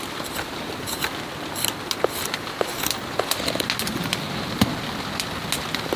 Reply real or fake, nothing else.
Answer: real